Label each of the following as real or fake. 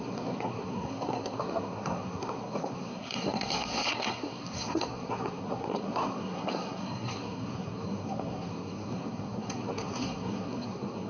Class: fake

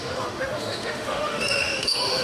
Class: fake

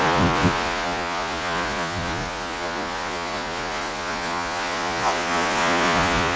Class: fake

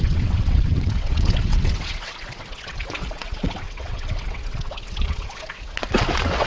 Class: fake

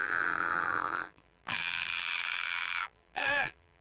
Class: fake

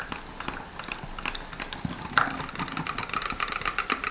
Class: real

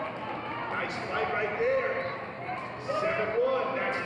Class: real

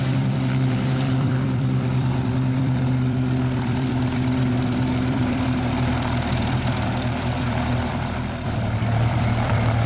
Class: fake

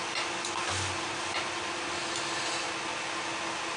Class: real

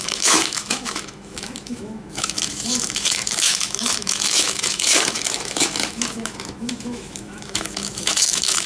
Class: fake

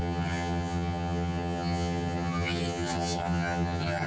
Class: fake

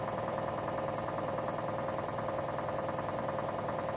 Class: fake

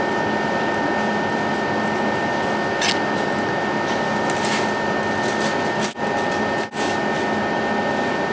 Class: real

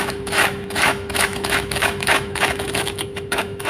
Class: fake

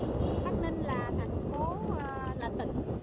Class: real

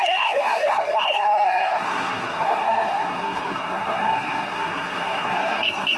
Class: fake